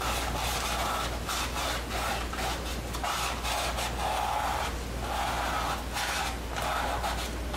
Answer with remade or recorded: recorded